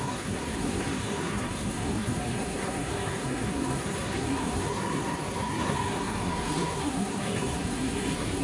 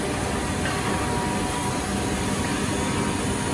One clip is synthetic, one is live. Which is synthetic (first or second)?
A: first